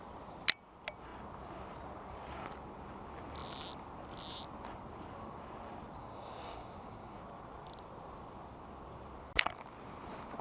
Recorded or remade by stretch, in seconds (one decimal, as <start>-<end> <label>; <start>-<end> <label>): 0.0-6.0 recorded; 6.0-7.2 remade; 7.2-10.4 recorded